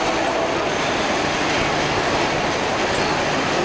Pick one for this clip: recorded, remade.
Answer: recorded